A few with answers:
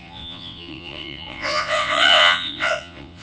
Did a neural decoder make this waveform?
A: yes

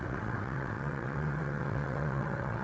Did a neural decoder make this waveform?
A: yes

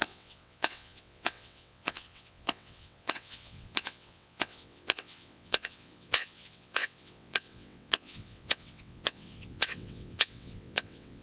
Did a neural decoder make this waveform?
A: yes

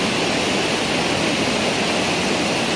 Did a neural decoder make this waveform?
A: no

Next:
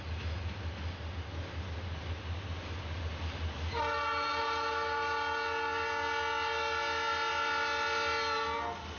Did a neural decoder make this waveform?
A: no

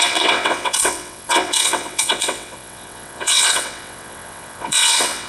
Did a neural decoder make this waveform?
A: yes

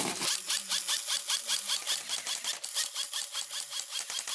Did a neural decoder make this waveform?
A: no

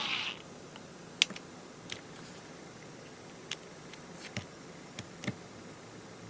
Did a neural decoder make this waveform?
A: no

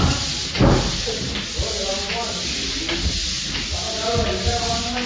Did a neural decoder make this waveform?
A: no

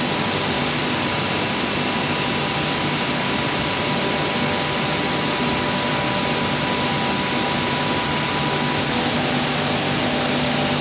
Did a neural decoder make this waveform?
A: no